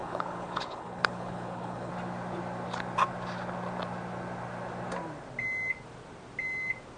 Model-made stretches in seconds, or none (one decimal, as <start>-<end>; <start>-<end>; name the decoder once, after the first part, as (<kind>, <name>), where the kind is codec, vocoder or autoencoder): 0.0-1.9 (codec, HILCodec)